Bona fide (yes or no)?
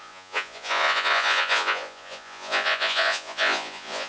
no